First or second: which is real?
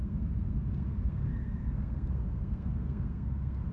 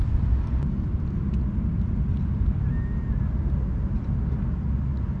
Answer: second